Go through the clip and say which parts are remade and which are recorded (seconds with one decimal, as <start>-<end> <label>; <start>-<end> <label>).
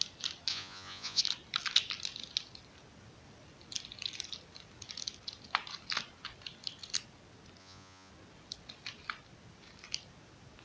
0.0-0.5 recorded; 0.5-1.2 remade; 1.2-7.6 recorded; 7.6-8.1 remade; 8.1-10.6 recorded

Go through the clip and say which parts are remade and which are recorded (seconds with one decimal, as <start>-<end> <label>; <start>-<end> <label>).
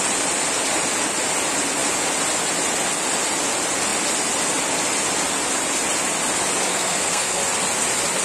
0.0-6.7 recorded; 6.7-7.4 remade; 7.4-8.2 recorded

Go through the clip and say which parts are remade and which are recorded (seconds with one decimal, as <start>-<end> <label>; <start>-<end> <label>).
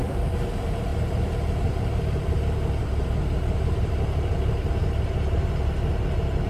0.0-6.5 recorded